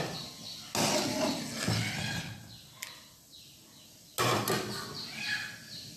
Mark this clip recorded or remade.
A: recorded